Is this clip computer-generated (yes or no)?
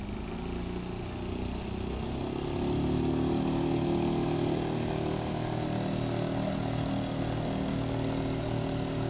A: no